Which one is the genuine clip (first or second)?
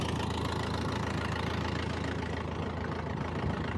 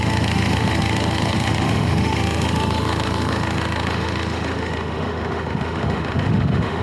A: first